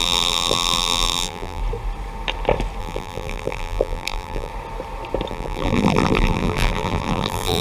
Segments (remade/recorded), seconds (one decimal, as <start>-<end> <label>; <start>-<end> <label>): 0.0-1.6 remade; 1.6-2.8 recorded; 2.8-4.5 remade; 4.5-5.3 recorded; 5.3-7.6 remade